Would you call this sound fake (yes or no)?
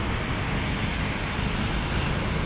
no